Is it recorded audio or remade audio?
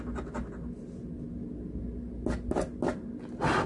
recorded